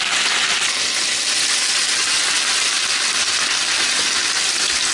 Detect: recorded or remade recorded